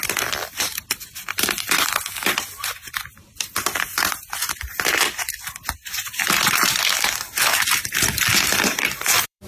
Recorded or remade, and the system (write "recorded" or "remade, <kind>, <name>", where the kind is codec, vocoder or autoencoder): remade, vocoder, BigVGAN v2